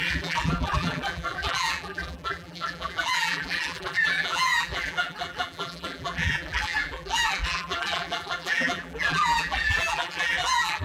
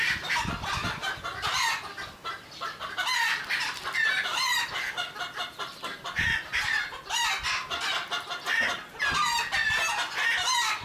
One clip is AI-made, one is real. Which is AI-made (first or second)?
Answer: first